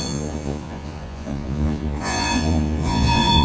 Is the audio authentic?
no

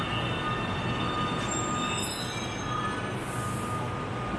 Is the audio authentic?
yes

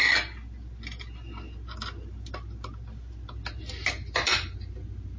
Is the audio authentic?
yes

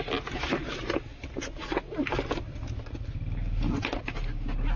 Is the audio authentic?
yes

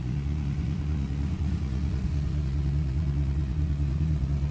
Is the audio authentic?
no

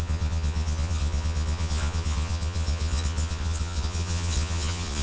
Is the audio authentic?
no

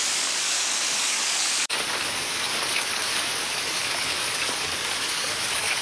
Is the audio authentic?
no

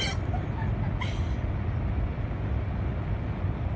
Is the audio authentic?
yes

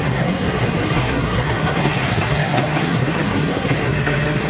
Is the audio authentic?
no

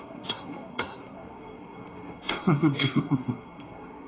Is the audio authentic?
no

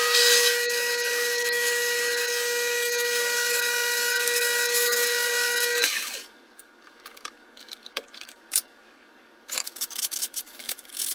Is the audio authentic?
no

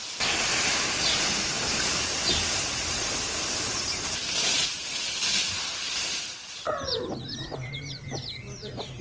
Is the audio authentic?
no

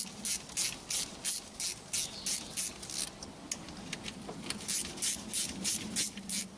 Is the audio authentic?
yes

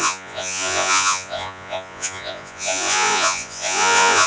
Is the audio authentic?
no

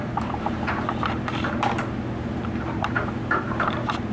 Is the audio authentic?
no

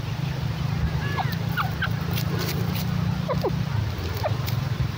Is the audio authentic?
no